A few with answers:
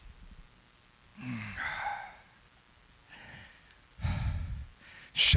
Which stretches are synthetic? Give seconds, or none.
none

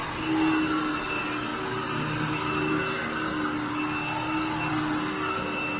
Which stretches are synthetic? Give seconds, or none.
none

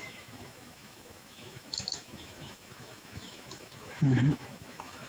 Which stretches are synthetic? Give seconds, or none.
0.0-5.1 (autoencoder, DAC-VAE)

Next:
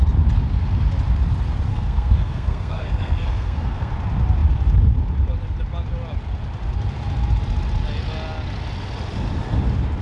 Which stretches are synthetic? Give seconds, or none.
1.7-3.9 (codec, SNAC)

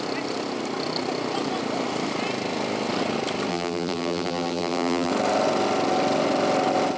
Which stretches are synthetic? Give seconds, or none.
3.5-5.1 (vocoder, BigVGAN v2)

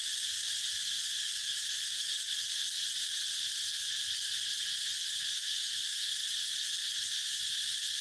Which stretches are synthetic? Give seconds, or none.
5.3-6.1 (autoencoder, DAC-VAE)

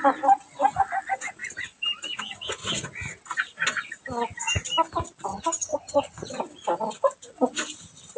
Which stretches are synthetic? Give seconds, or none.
5.3-6.3 (vocoder, HiFi-GAN)

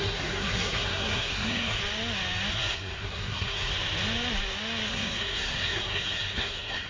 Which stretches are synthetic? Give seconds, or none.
0.0-1.8 (codec, SNAC); 2.5-3.7; 4.9-6.9